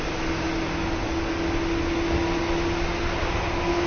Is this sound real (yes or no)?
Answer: yes